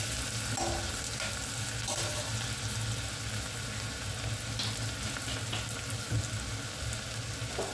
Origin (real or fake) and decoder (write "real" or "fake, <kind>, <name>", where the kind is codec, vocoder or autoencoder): real